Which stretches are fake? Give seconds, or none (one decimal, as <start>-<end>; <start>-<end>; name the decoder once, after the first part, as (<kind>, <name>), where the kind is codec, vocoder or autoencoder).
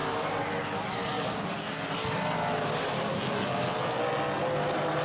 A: none